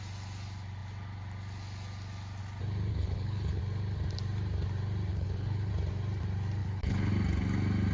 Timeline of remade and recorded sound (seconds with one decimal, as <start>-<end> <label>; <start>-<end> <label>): 0.0-2.9 recorded; 2.9-3.6 remade; 3.6-5.1 recorded; 5.1-5.7 remade; 5.7-6.6 recorded; 6.6-7.1 remade; 7.1-7.9 recorded